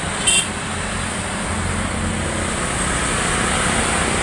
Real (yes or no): yes